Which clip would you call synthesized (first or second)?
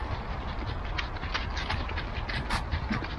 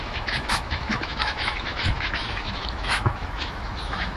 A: second